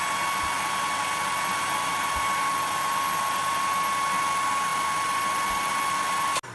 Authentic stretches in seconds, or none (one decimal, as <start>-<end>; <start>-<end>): 0.0-6.5